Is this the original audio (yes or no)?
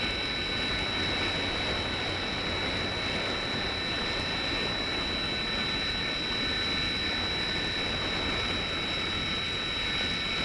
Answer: yes